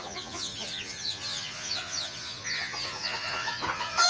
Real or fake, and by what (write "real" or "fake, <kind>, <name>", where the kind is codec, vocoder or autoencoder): fake, vocoder, Vocos